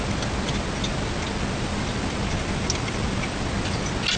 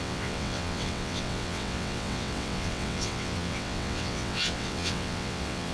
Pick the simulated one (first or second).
second